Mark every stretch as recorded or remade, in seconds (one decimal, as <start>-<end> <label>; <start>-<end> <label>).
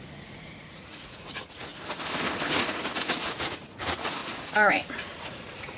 0.0-1.7 remade; 1.7-2.5 recorded; 2.5-5.8 remade